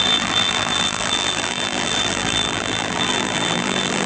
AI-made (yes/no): yes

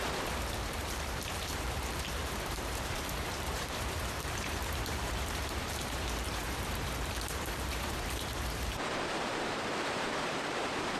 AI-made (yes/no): yes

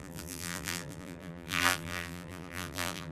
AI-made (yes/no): yes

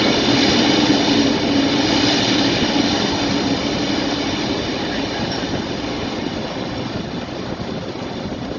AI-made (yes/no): yes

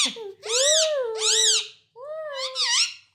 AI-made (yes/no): no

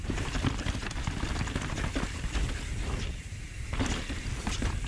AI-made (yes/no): yes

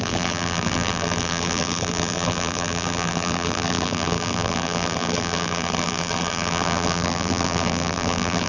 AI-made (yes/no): yes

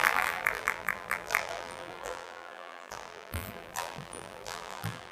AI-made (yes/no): yes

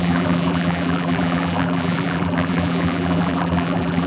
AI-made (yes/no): yes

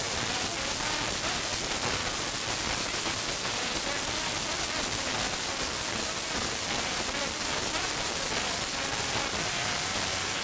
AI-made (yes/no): no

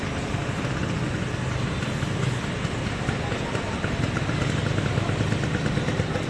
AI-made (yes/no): no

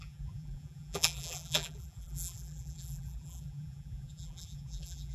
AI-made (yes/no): yes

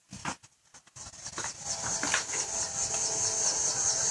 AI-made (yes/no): no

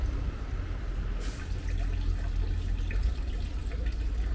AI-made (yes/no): no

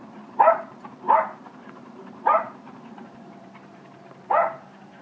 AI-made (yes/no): yes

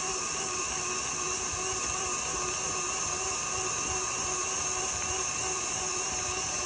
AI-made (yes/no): yes